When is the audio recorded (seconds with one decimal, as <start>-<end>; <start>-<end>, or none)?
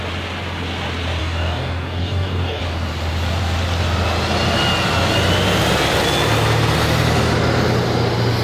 0.0-1.2; 2.6-8.4